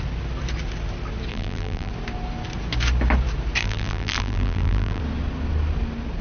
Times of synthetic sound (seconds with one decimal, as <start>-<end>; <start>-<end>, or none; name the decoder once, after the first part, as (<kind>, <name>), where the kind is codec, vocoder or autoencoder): 1.3-1.9 (vocoder, BigVGAN v2); 3.6-5.0